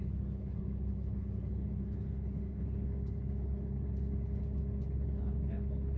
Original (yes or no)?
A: no